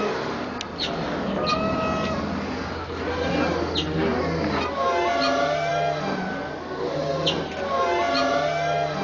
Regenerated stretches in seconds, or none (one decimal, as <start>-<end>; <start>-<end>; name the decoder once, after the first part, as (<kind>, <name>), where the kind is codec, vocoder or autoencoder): none